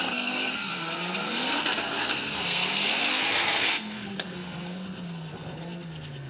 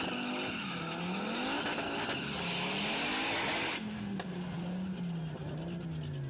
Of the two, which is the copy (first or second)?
first